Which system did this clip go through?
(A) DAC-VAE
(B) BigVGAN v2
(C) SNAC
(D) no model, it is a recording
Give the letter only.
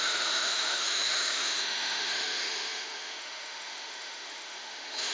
A